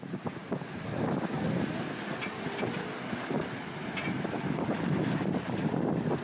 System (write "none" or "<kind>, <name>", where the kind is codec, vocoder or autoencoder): none